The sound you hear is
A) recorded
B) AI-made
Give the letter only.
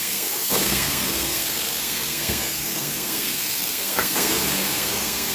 B